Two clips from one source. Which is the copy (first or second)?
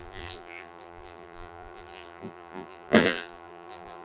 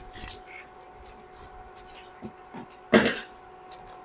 first